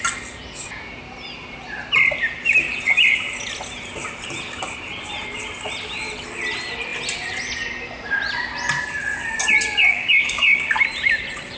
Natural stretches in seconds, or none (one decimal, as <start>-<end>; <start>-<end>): 0.0-9.9; 10.7-11.6